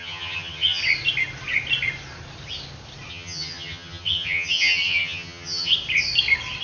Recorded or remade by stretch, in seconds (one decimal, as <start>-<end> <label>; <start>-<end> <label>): 0.0-0.8 remade; 0.8-3.1 recorded; 3.1-5.7 remade; 5.7-6.6 recorded